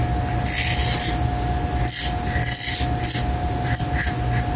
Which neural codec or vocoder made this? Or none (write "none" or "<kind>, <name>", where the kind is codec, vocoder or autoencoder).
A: none